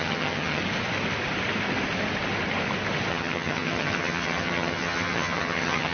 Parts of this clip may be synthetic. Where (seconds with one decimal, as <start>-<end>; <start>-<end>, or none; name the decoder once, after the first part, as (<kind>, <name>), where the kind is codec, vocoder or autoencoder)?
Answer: 0.0-0.6 (vocoder, HiFi-GAN); 3.1-5.9

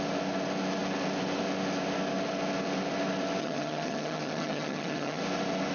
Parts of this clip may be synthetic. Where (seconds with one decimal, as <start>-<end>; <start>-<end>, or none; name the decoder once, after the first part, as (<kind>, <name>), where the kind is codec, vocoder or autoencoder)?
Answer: 3.4-5.2 (vocoder, HiFi-GAN)

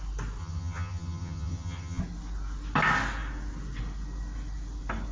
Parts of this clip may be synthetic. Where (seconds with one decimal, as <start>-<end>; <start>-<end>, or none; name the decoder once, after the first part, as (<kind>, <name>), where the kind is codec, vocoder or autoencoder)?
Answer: 0.4-2.0 (vocoder, HiFi-GAN)

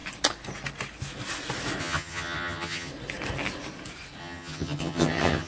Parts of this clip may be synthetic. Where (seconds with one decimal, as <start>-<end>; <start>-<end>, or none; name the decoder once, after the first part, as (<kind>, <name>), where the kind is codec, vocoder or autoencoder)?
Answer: 1.8-2.9 (vocoder, HiFi-GAN); 4.2-5.5

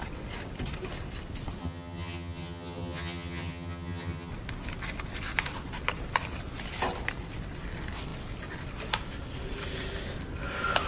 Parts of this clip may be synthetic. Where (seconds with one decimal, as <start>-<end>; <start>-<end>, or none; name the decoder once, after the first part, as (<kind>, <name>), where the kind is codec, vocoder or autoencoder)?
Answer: 1.6-4.3 (vocoder, HiFi-GAN)

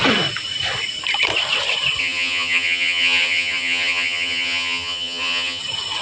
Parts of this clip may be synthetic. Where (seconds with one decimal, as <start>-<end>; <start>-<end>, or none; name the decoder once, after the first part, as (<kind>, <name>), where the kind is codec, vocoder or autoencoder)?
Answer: 2.0-5.6 (vocoder, HiFi-GAN)

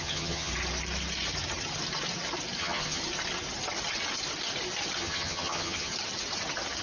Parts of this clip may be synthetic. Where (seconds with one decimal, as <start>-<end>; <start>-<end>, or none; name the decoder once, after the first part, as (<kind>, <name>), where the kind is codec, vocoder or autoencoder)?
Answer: 0.0-0.5 (vocoder, HiFi-GAN); 2.6-3.0; 5.0-5.9

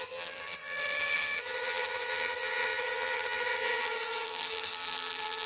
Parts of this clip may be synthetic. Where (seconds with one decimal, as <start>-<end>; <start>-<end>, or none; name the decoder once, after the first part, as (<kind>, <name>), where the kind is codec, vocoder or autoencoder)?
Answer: 0.0-5.5 (vocoder, HiFi-GAN)